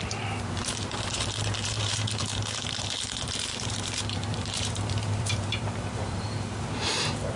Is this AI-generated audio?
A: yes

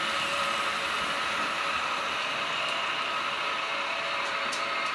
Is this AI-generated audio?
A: no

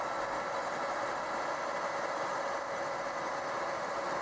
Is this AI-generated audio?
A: no